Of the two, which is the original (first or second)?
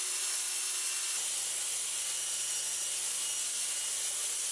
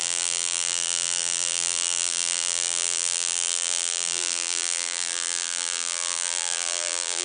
first